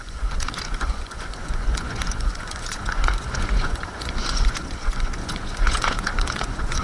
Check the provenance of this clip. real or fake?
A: fake